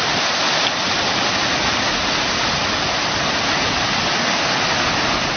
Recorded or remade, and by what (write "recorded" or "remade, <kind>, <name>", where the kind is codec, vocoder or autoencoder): recorded